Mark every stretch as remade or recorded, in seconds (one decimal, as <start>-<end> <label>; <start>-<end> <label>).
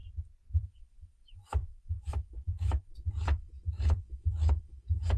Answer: 0.0-0.6 recorded; 0.6-5.2 remade